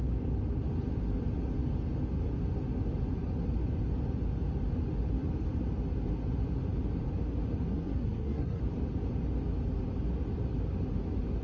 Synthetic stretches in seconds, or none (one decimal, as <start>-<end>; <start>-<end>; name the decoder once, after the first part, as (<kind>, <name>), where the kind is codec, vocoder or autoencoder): 7.7-8.6 (codec, SNAC)